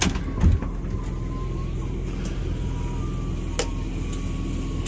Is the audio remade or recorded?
recorded